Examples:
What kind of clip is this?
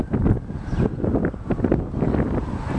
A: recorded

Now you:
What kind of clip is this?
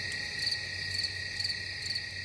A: recorded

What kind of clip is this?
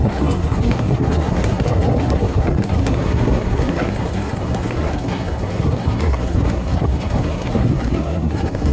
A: remade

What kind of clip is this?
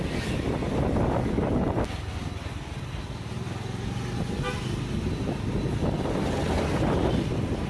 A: recorded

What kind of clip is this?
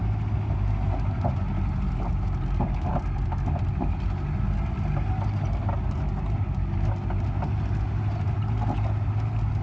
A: recorded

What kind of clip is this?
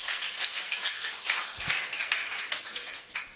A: remade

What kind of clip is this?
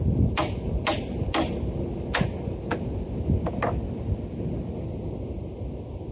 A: recorded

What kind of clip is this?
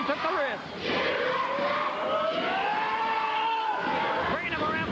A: recorded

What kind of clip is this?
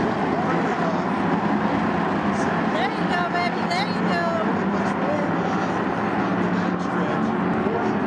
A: recorded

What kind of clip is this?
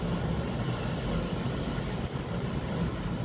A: recorded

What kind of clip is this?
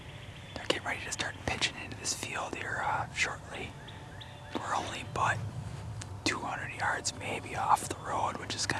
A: recorded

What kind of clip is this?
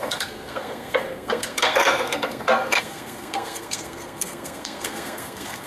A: remade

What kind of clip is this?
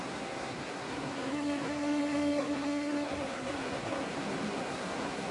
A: remade